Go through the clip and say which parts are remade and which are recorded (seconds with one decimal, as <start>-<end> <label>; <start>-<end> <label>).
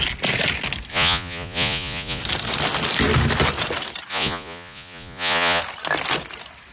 0.0-0.9 recorded; 0.9-2.2 remade; 2.2-4.1 recorded; 4.1-5.6 remade; 5.6-6.7 recorded